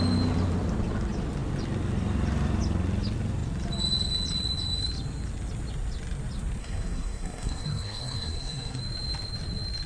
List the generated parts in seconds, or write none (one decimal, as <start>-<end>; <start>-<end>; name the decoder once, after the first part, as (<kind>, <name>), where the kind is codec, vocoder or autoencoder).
6.6-8.8 (codec, SNAC)